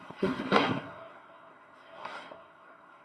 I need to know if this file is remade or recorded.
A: remade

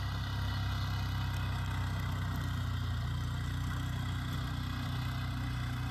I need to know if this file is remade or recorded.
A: recorded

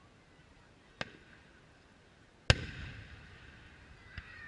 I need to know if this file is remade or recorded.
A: recorded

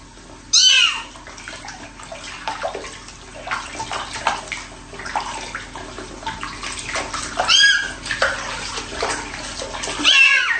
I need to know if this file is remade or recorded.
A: recorded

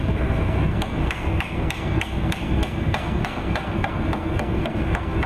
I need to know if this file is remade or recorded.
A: remade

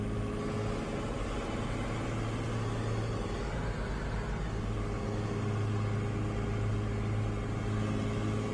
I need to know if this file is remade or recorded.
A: recorded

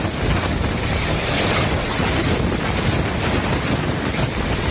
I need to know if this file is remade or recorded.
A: recorded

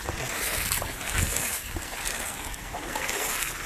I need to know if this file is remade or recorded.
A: remade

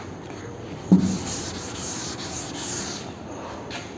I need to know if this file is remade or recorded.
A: recorded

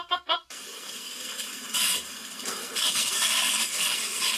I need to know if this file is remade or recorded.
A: remade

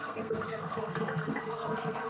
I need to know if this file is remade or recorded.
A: remade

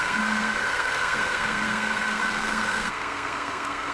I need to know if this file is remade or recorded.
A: remade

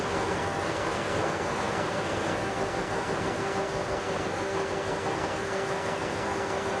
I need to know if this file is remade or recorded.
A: remade